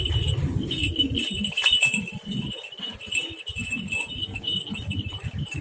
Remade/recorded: recorded